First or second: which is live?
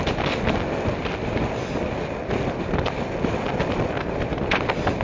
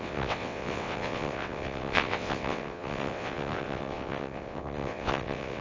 first